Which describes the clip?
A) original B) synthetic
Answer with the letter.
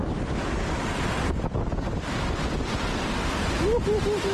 A